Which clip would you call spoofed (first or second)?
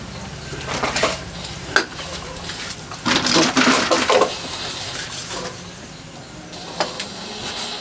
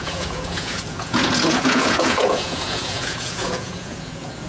second